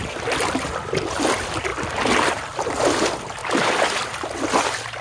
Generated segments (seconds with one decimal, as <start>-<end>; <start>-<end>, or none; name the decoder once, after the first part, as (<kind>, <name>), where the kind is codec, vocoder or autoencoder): none